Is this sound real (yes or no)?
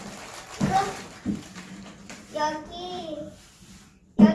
no